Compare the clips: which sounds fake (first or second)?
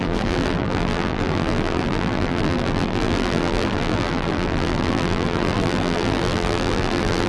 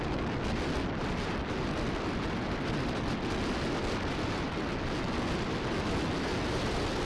first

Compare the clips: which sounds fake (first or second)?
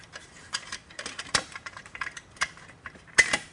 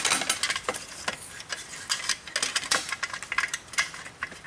first